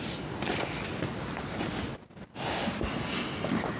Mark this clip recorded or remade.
recorded